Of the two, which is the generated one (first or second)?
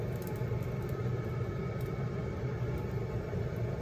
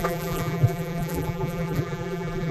second